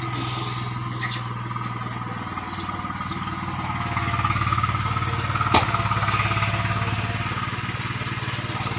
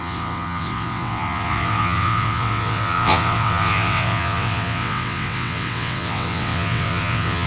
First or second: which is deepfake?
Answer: second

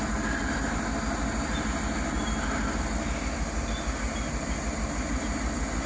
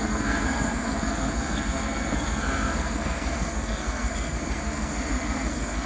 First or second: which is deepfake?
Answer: second